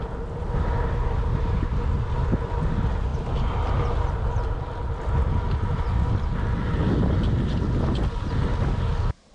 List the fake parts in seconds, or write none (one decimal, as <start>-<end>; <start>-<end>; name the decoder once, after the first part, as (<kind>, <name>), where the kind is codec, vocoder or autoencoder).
none